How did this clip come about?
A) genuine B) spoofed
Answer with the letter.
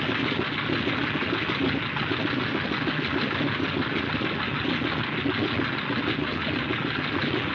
A